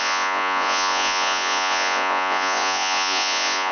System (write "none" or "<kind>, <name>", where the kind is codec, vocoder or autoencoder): vocoder, Vocos